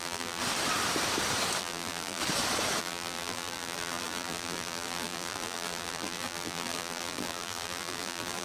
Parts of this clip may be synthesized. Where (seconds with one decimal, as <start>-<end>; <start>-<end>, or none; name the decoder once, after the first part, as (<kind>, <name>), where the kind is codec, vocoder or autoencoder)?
0.0-0.4 (vocoder, BigVGAN v2); 1.6-2.2; 2.8-8.4